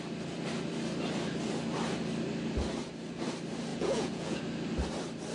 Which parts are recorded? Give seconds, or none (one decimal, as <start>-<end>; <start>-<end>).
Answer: 0.0-3.7; 4.4-5.3